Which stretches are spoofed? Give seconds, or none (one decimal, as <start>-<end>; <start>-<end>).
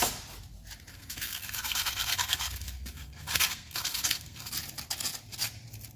0.9-4.5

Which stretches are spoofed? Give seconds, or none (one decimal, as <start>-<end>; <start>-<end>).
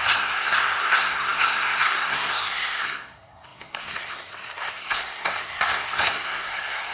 0.0-6.9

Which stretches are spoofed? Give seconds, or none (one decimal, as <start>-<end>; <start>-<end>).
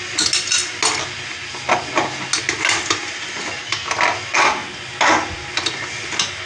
none